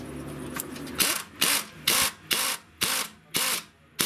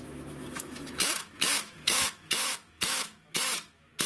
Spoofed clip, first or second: second